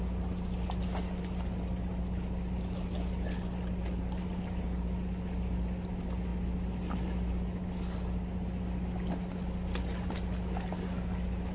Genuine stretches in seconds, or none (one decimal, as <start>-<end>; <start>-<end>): 0.0-11.5